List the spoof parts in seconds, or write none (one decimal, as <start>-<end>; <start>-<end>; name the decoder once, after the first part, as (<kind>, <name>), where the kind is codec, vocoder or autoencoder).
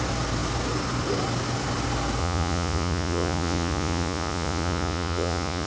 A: 2.2-5.7 (vocoder, Vocos)